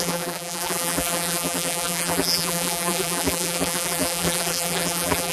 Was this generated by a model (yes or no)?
yes